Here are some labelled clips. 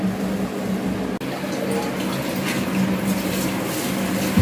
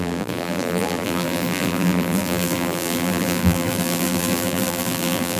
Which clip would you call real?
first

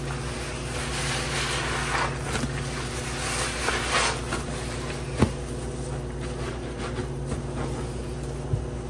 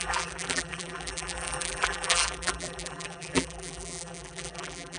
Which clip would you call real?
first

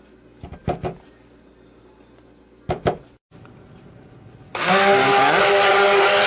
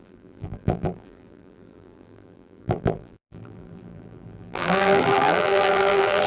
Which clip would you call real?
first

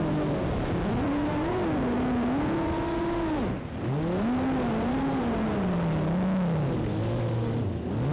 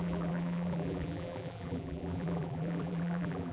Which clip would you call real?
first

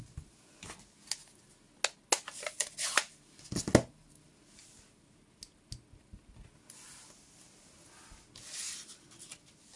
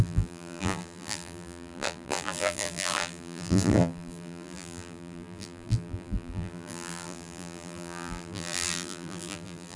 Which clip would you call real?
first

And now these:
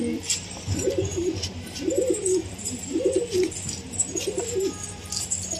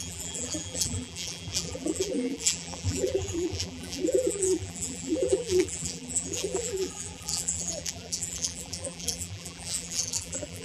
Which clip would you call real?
first